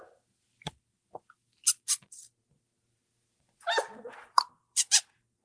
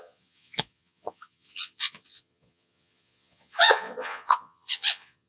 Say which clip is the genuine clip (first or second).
first